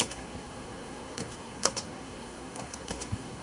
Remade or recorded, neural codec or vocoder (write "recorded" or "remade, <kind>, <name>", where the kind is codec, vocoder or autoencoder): remade, codec, SNAC